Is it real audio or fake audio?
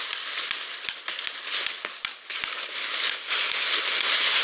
real